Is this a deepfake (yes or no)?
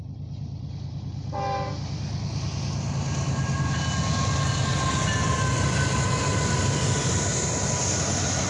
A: no